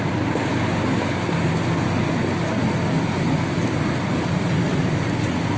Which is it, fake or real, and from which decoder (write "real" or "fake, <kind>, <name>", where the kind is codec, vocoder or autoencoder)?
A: real